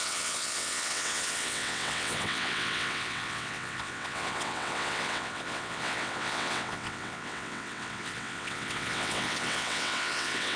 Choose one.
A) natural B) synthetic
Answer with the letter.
B